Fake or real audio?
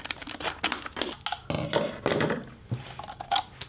real